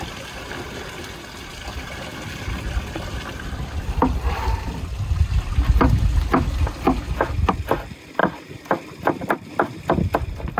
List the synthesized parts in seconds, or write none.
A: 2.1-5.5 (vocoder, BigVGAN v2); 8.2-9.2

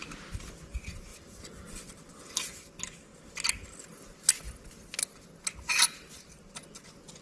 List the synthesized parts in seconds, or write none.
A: 1.1-2.7 (vocoder, BigVGAN v2)

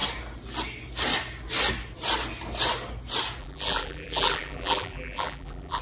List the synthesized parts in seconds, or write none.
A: 3.4-5.8 (vocoder, BigVGAN v2)

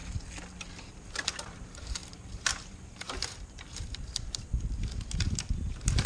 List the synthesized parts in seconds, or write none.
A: 0.6-6.1 (vocoder, BigVGAN v2)

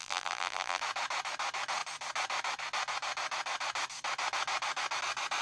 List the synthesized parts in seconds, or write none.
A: 0.0-0.8 (vocoder, BigVGAN v2)